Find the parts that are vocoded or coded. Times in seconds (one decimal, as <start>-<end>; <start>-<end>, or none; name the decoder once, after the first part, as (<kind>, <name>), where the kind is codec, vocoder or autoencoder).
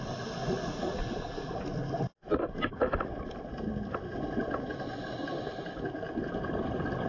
0.4-1.6 (vocoder, Vocos)